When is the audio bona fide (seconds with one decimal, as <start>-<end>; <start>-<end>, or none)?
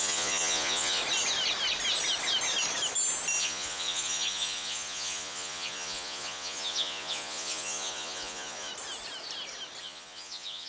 1.0-3.4; 8.7-9.8